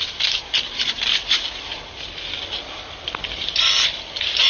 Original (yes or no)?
yes